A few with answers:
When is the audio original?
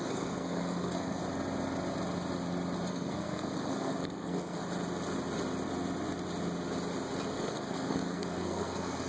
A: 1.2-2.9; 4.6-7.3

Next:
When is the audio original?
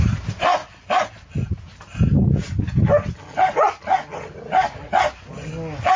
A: 0.0-6.0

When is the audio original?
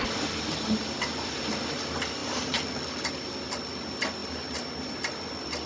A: 0.0-5.7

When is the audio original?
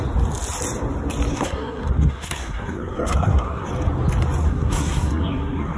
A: 0.0-1.3; 3.7-4.4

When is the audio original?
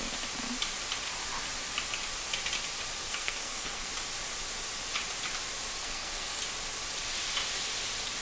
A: 0.0-3.0; 3.9-5.8; 6.4-8.2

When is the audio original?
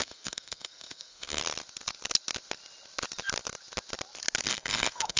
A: 1.4-4.5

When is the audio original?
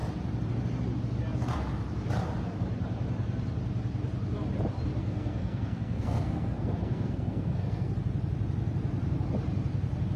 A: 0.0-5.0; 7.9-10.2